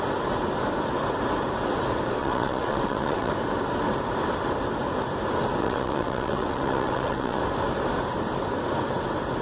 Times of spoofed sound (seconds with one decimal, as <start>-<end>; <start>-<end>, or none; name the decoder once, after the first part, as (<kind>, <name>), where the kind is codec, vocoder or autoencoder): 2.2-3.3 (vocoder, WaveNeXt); 5.6-7.4